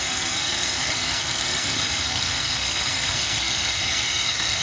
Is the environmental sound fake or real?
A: fake